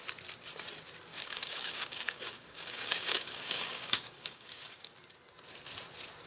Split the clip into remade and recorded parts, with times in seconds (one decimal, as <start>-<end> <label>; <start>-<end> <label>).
0.0-1.1 recorded; 1.1-4.9 remade; 4.9-6.3 recorded